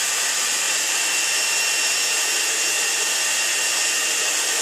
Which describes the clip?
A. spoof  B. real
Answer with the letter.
B